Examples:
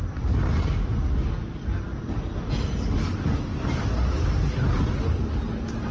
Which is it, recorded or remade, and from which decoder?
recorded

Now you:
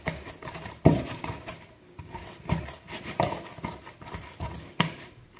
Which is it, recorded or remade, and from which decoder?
recorded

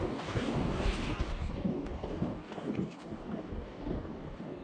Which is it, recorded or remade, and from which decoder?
remade, codec, DAC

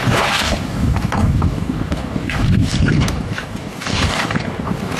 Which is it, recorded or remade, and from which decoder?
remade, codec, DAC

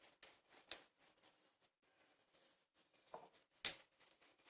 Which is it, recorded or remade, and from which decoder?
recorded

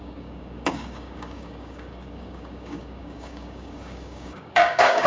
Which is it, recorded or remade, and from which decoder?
remade, codec, DAC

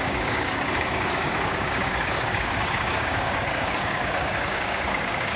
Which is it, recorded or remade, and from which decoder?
remade, codec, DAC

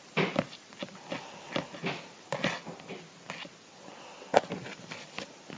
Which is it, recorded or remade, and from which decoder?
recorded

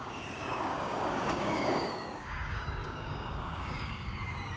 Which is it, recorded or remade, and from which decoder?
remade, codec, DAC